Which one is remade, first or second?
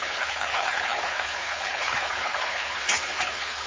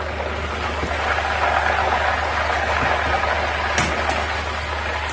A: first